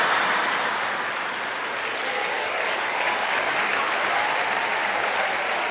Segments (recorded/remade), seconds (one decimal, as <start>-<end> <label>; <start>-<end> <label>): 0.0-2.2 recorded; 2.2-3.8 remade; 3.8-5.7 recorded